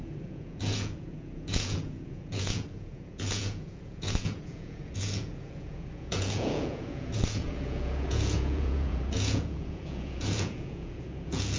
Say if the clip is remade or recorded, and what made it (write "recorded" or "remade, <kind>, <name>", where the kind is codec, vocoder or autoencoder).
remade, vocoder, Vocos